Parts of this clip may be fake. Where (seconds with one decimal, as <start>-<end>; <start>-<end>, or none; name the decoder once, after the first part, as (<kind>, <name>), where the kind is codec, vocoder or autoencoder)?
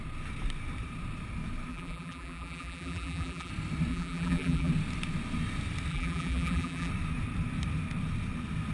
1.7-3.5 (vocoder, BigVGAN v2); 3.9-4.7; 5.9-6.9